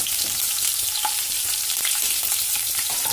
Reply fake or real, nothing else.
fake